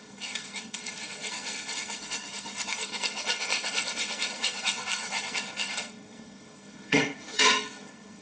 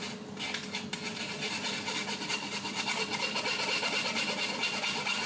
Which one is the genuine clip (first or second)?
second